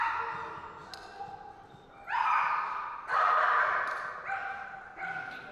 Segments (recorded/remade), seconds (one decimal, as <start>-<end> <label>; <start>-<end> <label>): 0.0-5.5 recorded